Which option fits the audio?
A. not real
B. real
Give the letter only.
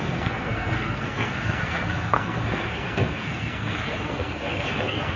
A